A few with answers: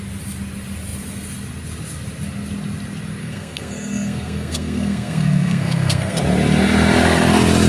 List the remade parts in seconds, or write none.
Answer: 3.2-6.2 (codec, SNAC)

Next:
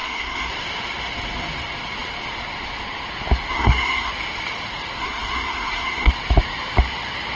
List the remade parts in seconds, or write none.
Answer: 0.0-0.5 (codec, SNAC); 3.5-4.1; 5.0-6.1

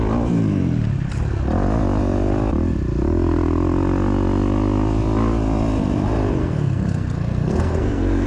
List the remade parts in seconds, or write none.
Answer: 6.4-8.3 (codec, SNAC)

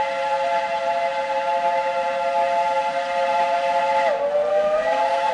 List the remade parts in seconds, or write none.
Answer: 4.5-5.3 (codec, SNAC)

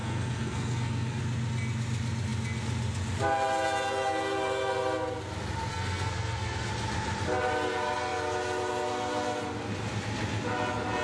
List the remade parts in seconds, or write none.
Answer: 0.0-1.2 (codec, SNAC); 5.7-6.7

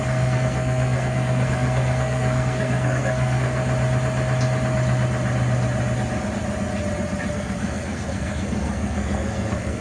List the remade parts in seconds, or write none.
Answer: 0.0-3.6 (codec, SNAC); 7.3-9.8

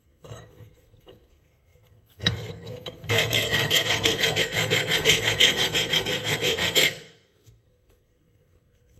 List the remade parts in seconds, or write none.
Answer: 0.0-9.0 (codec, SNAC)

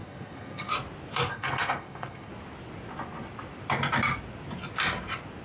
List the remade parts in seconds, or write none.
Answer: 0.0-0.7 (codec, SNAC); 1.3-2.3